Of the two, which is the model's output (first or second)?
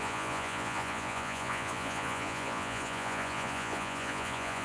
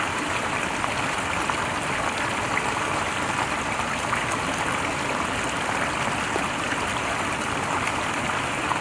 first